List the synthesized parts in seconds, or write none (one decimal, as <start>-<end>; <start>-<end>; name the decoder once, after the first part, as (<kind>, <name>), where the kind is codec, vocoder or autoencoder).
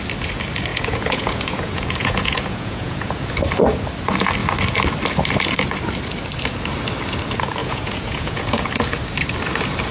0.7-3.3 (vocoder, Vocos); 7.6-8.7